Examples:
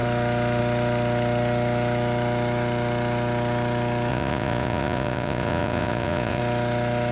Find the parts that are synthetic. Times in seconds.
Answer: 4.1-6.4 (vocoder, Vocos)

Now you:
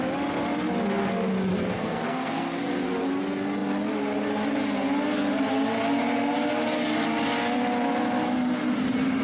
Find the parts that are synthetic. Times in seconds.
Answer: 1.5-2.9 (codec, SNAC)

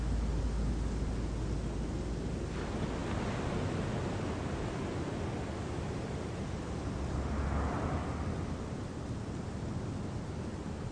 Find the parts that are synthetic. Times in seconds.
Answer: none

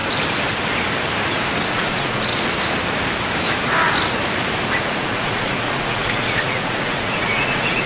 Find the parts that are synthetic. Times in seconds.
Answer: 1.7-2.3 (vocoder, Vocos); 4.8-7.9